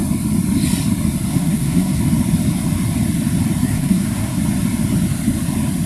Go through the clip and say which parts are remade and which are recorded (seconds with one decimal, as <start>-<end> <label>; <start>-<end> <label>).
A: 0.0-1.3 recorded; 1.3-2.0 remade; 2.0-3.6 recorded; 3.6-4.4 remade; 4.4-5.9 recorded